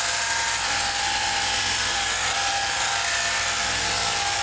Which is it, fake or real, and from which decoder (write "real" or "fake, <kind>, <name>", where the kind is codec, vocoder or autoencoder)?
real